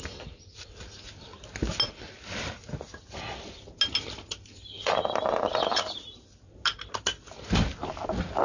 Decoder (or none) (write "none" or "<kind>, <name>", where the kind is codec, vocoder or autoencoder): none